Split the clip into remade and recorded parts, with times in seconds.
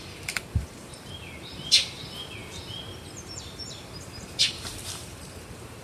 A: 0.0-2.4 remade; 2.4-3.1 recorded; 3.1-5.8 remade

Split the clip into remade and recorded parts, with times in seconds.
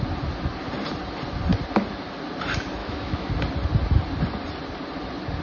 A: 0.0-2.8 recorded; 2.8-3.3 remade; 3.3-5.4 recorded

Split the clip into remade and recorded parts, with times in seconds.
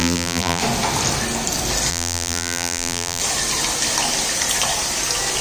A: 0.0-0.6 remade; 0.6-1.9 recorded; 1.9-3.2 remade; 3.2-5.4 recorded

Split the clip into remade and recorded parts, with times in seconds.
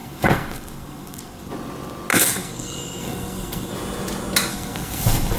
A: 0.0-1.5 remade; 1.5-2.1 recorded; 2.1-3.7 remade; 3.7-4.5 recorded; 4.5-5.4 remade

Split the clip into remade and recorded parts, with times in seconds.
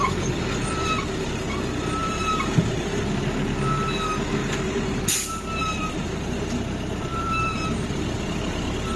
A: 0.0-2.0 recorded; 2.0-3.0 remade; 3.0-4.4 recorded; 4.4-5.0 remade; 5.0-5.6 recorded; 5.6-6.4 remade; 6.4-7.1 recorded; 7.1-8.2 remade; 8.2-9.0 recorded